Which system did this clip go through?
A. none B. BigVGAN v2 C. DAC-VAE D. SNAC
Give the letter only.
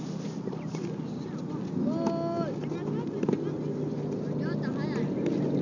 A